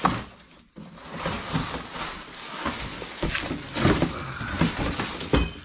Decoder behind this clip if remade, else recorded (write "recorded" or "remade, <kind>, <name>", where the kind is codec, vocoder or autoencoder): recorded